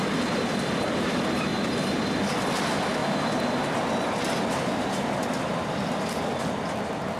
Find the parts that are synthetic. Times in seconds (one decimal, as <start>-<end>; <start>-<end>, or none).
1.5-2.0; 3.0-3.9